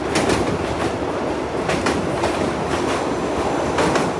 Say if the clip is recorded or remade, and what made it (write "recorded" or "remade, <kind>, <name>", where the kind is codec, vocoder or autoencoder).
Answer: recorded